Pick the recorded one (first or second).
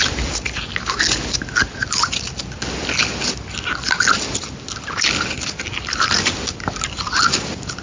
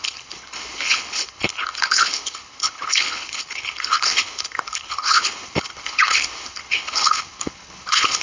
first